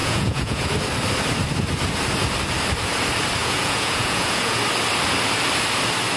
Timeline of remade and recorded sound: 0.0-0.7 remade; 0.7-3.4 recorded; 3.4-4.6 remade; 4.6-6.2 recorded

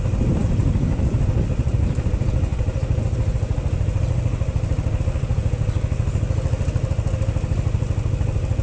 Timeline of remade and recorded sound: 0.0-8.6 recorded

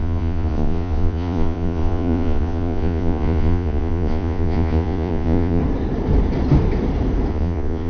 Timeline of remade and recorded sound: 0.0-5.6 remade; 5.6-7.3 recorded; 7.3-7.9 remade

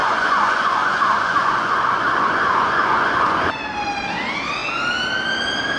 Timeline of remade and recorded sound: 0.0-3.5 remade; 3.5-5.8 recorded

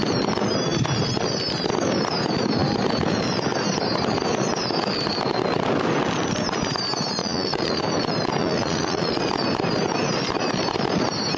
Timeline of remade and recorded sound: 0.0-7.2 recorded; 7.2-7.8 remade; 7.8-8.4 recorded; 8.4-9.1 remade; 9.1-11.4 recorded